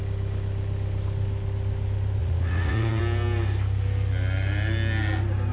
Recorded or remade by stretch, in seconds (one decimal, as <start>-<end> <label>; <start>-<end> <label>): 0.0-2.2 recorded; 2.2-3.0 remade; 3.0-5.5 recorded